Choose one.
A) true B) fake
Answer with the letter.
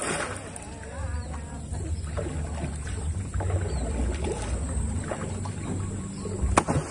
A